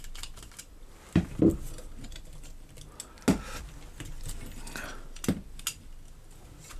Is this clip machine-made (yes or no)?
no